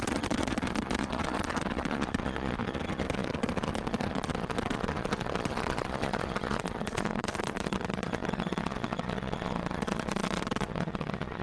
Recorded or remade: remade